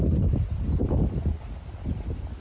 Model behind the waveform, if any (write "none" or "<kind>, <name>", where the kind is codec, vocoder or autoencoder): none